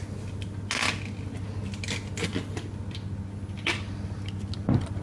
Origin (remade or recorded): recorded